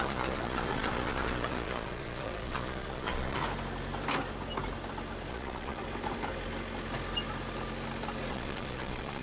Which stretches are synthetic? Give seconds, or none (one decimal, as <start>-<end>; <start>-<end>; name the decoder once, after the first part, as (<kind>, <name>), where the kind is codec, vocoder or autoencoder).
0.0-3.4 (vocoder, Vocos); 5.3-5.8; 8.3-9.2